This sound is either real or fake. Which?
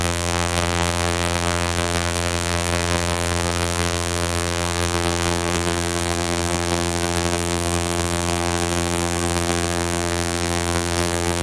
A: fake